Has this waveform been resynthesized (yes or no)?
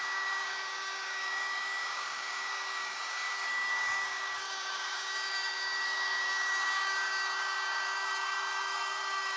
yes